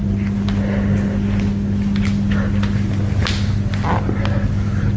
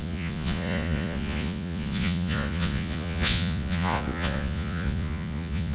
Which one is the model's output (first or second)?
second